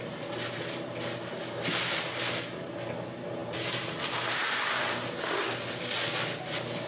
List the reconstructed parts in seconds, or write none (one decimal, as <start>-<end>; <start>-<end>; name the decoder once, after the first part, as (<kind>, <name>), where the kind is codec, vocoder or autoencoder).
none